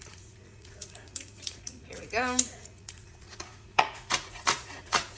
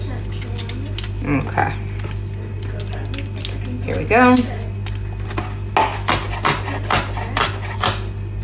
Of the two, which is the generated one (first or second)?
first